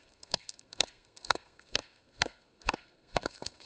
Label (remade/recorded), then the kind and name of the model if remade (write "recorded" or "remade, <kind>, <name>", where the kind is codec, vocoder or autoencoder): remade, codec, SNAC